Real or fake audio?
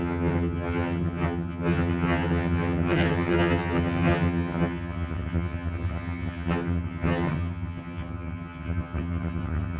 fake